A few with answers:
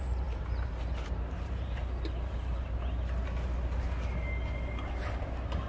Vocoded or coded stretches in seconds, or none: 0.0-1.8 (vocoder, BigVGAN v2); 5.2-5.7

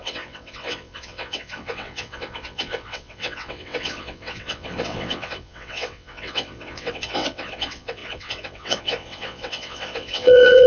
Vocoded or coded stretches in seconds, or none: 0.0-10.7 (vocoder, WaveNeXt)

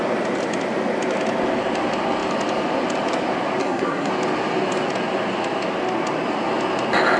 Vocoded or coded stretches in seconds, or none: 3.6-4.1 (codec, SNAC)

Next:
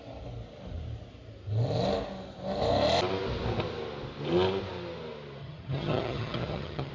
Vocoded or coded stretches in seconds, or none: 5.4-6.9 (vocoder, HiFi-GAN)